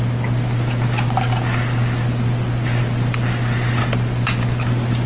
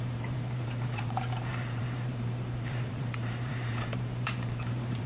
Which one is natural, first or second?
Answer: first